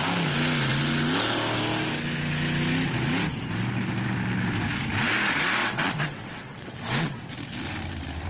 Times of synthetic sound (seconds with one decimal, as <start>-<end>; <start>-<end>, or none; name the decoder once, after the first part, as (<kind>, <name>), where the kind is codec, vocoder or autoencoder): 5.6-7.2 (vocoder, WaveNeXt)